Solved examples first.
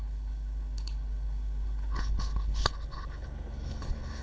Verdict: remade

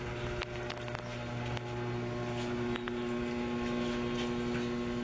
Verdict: recorded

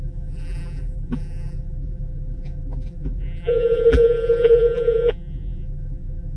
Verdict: remade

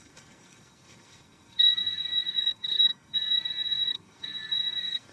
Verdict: remade